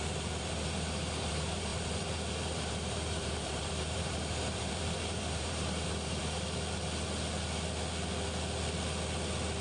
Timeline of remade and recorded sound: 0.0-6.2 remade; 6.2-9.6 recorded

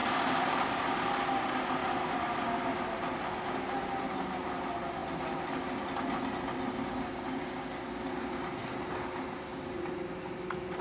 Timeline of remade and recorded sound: 0.0-1.8 recorded; 1.8-2.6 remade; 2.6-5.0 recorded; 5.0-5.7 remade; 5.7-10.8 recorded